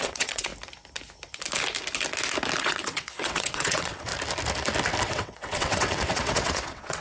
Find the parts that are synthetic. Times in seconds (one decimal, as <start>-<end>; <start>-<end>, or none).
0.0-0.5; 2.6-4.1; 5.0-7.0